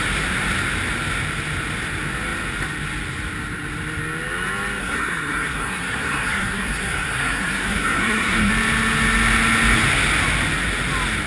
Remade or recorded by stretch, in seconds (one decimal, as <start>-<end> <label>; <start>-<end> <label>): 0.0-4.8 recorded; 4.8-8.5 remade; 8.5-11.3 recorded